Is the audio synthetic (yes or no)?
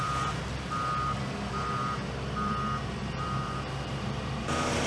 yes